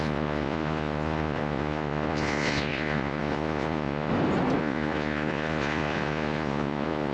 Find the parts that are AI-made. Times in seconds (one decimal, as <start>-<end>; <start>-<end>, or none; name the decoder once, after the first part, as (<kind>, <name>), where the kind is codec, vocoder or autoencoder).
0.0-4.1 (vocoder, Vocos); 4.6-7.1